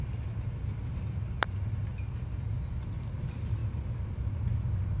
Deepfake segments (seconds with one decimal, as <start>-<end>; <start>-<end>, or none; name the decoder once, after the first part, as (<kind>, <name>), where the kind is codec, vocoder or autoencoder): none